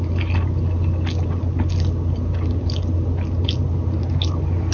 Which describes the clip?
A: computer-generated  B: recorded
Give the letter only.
B